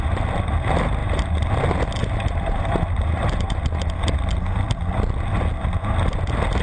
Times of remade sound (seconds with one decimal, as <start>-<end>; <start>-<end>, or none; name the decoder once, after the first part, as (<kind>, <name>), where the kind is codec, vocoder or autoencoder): 1.0-1.5 (vocoder, BigVGAN v2); 2.0-3.6